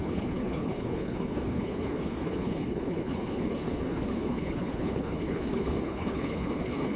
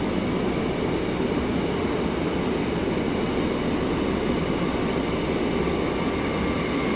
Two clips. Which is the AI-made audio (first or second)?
first